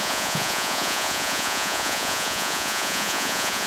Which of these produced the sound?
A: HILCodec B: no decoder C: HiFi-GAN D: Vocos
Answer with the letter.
D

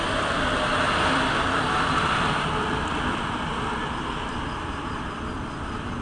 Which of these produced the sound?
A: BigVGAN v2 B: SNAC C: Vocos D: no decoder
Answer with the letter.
A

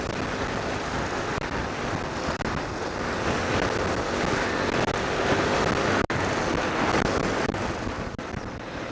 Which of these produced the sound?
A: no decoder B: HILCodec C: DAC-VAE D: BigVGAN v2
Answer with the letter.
A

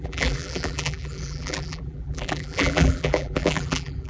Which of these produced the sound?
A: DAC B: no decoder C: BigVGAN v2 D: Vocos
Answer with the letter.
C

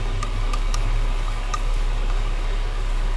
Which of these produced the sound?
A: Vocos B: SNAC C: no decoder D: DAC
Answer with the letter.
D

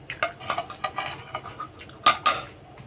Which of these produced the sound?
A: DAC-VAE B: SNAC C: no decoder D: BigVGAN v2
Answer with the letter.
C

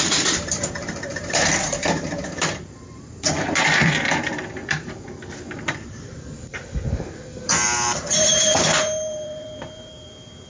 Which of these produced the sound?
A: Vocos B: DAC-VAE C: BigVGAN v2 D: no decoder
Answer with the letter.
C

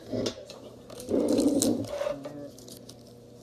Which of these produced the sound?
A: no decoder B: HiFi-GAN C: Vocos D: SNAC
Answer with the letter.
A